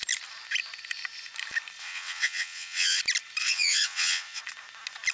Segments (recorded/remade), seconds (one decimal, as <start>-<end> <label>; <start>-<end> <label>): 0.0-1.8 recorded; 1.8-3.0 remade; 3.0-3.4 recorded; 3.4-4.4 remade; 4.4-5.1 recorded